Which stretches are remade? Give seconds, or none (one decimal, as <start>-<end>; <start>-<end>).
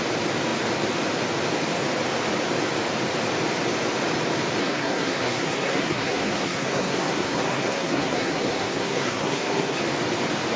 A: 4.6-9.8